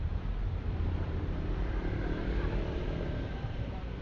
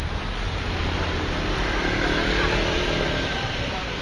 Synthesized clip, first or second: first